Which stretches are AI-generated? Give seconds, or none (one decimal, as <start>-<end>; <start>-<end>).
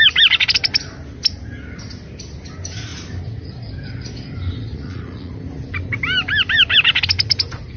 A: 4.7-5.3